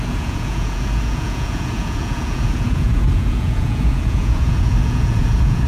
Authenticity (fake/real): fake